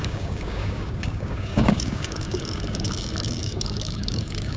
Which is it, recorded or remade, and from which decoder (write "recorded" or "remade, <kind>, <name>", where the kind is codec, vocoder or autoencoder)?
remade, codec, DAC